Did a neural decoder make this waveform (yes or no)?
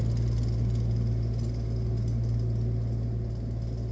no